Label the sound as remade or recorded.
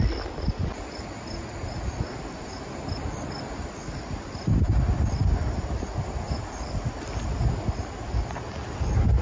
recorded